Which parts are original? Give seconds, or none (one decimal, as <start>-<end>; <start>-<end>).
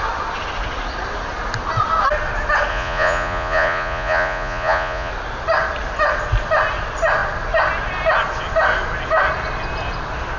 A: 0.0-2.7; 5.1-10.4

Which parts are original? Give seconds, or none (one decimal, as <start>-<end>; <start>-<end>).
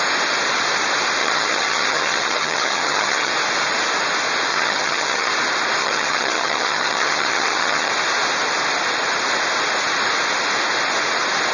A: 0.0-1.2; 3.3-4.5; 5.3-5.8; 7.9-11.5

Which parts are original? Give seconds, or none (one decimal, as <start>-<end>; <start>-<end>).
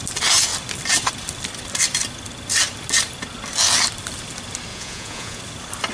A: 0.0-4.7; 5.4-5.9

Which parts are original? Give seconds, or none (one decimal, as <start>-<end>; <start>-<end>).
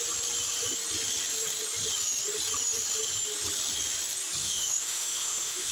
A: 0.0-4.4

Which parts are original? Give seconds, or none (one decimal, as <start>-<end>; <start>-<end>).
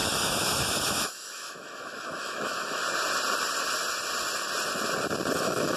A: 2.8-5.3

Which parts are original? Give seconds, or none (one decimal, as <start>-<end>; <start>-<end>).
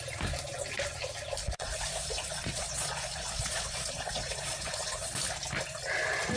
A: 0.0-1.4; 5.2-6.4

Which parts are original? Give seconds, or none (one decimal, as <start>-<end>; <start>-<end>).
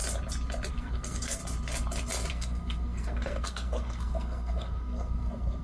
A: 0.0-0.7; 1.4-2.3